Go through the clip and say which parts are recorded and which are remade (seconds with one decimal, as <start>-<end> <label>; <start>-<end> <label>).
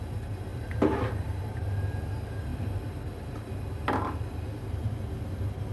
0.0-0.5 recorded; 0.5-1.4 remade; 1.4-5.7 recorded